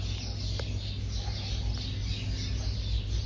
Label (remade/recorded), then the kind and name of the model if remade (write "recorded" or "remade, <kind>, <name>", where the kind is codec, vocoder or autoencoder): recorded